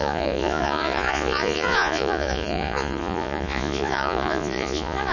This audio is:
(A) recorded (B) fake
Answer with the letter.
B